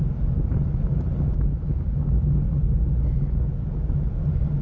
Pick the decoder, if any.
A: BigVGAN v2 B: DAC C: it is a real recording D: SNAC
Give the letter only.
C